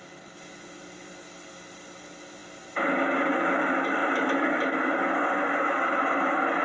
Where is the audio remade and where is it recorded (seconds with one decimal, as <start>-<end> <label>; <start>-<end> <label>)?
0.0-6.6 recorded